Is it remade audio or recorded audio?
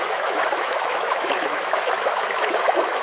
remade